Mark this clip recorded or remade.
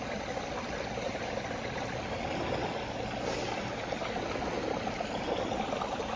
recorded